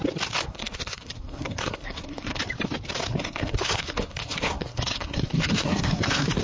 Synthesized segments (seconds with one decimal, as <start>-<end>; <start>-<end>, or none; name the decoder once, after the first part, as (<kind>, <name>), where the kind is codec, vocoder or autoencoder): 0.5-2.4 (codec, SNAC); 3.1-6.4